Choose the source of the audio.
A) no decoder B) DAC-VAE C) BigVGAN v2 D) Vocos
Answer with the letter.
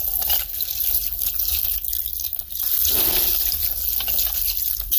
A